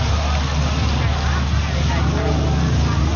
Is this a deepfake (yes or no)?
no